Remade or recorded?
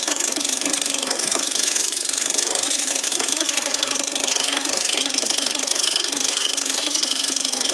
remade